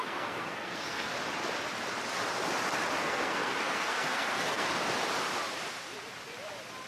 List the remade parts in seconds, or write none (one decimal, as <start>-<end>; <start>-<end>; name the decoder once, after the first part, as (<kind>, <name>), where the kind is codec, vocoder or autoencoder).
0.0-1.1 (codec, SNAC); 3.0-4.7